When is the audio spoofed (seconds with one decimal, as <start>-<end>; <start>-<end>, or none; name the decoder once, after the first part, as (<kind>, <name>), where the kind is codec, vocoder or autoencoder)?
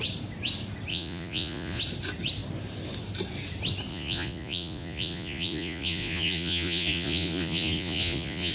0.9-1.8 (vocoder, Vocos); 3.9-8.5